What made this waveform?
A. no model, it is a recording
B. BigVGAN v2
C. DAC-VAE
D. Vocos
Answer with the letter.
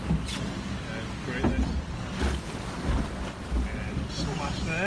A